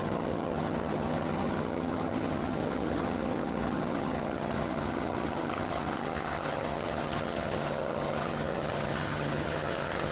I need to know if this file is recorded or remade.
remade